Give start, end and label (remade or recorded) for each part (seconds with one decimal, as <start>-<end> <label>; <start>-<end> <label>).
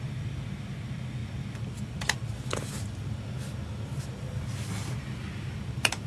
0.0-6.1 recorded